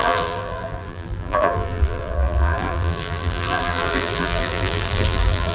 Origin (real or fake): fake